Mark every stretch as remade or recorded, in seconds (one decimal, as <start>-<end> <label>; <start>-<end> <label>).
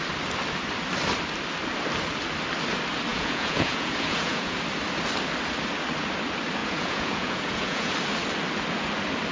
0.0-3.1 recorded; 3.1-4.6 remade; 4.6-6.6 recorded; 6.6-7.9 remade; 7.9-9.3 recorded